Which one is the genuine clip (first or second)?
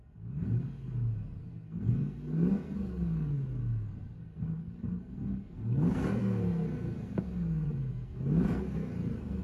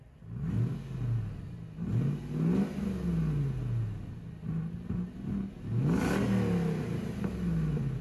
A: second